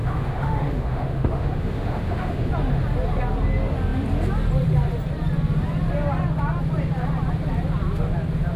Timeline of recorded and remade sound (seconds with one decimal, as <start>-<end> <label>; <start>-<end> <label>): 0.0-2.5 remade; 2.5-8.6 recorded